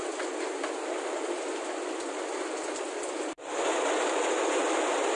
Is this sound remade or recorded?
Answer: recorded